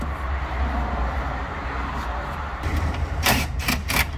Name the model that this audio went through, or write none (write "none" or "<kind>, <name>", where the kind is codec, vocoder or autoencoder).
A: vocoder, BigVGAN v2